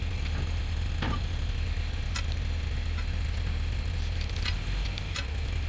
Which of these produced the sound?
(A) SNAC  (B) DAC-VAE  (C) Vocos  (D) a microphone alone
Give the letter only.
D